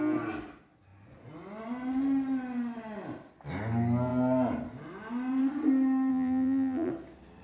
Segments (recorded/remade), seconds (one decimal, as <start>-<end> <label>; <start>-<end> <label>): 0.0-6.1 recorded; 6.1-6.9 remade; 6.9-7.4 recorded